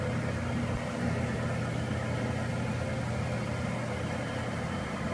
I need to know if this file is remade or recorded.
recorded